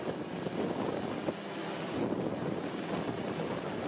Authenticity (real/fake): real